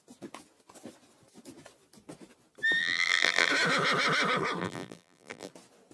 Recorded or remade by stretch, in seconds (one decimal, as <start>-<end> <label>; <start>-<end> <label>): 0.0-2.8 recorded; 2.8-3.5 remade; 3.5-4.6 recorded; 4.6-5.5 remade; 5.5-5.9 recorded